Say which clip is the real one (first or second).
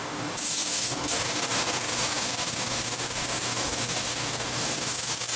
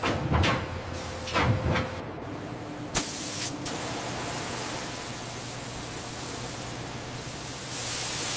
second